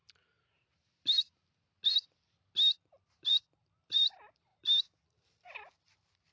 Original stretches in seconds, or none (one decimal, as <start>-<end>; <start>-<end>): 0.0-3.3

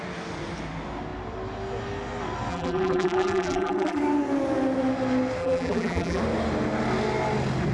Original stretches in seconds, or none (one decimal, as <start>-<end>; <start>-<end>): 0.0-2.5; 4.0-5.4; 6.2-7.7

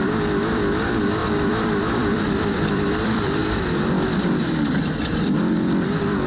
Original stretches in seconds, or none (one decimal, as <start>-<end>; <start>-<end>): 3.4-5.2